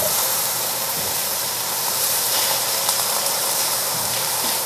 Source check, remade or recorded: remade